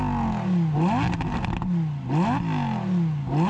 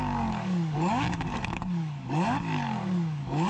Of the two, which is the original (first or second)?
first